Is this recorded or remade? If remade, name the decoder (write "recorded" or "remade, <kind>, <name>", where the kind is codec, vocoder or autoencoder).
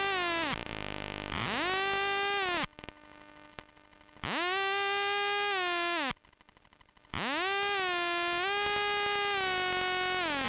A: recorded